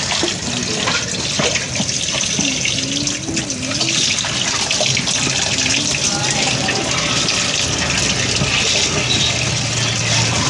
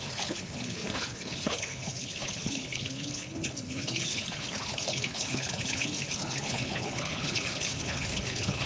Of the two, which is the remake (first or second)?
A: second